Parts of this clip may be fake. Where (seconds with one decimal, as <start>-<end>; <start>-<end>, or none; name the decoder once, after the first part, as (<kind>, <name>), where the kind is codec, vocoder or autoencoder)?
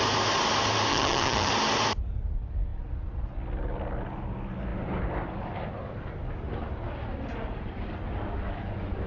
0.9-1.5 (vocoder, HiFi-GAN)